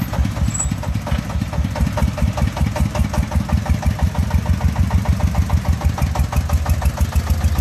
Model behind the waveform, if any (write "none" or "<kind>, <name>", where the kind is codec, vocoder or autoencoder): none